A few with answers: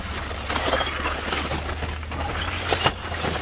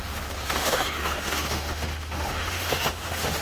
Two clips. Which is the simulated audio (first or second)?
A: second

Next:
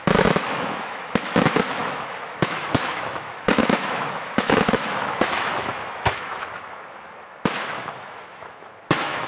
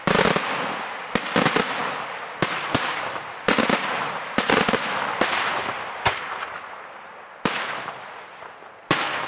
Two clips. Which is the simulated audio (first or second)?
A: first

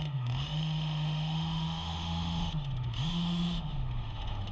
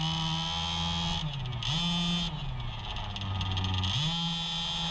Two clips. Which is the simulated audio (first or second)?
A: first